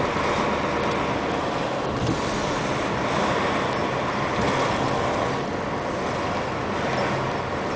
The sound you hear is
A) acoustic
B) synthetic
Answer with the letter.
A